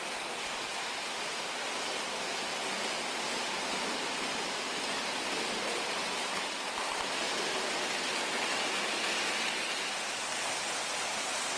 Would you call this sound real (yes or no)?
yes